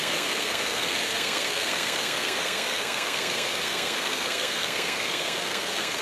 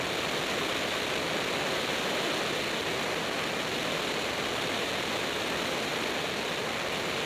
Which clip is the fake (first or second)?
first